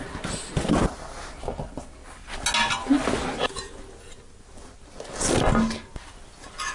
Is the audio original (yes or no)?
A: yes